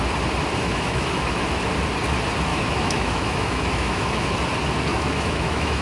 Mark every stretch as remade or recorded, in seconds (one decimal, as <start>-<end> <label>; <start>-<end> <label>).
0.0-0.6 recorded; 0.6-1.6 remade; 1.6-2.5 recorded; 2.5-4.3 remade; 4.3-4.9 recorded; 4.9-5.8 remade